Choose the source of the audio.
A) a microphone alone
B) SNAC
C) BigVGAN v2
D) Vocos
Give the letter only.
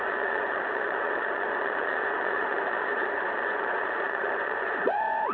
D